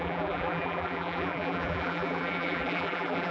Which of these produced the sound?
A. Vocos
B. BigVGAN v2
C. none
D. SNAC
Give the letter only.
B